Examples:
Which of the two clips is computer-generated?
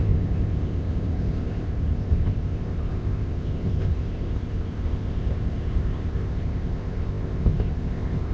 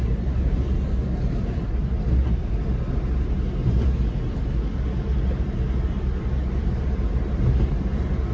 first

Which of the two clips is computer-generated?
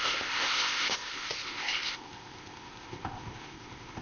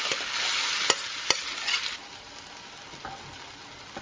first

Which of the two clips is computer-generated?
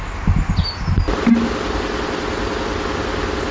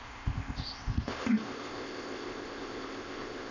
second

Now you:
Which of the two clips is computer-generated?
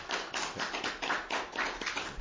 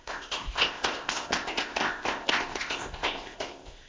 second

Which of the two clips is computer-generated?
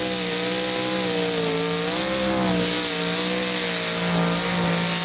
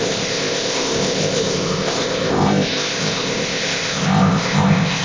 second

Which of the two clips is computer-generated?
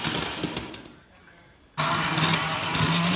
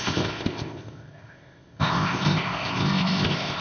second